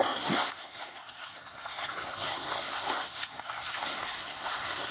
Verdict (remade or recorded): remade